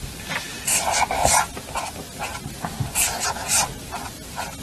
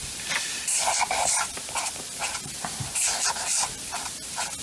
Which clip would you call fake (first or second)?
second